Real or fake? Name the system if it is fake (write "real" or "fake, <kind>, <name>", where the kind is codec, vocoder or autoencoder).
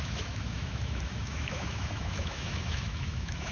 fake, autoencoder, DAC-VAE